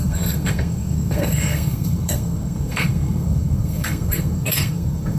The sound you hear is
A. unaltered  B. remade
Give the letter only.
B